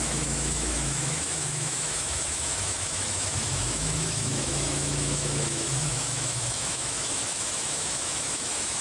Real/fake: fake